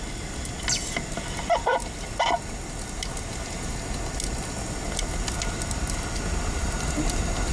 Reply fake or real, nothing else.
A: real